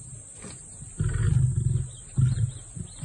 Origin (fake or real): real